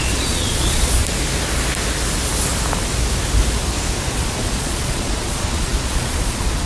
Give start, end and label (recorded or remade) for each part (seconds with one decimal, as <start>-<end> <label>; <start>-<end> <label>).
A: 0.0-1.0 remade; 1.0-4.1 recorded; 4.1-6.7 remade